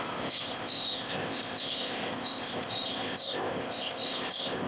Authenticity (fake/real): fake